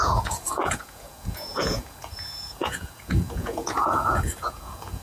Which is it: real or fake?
fake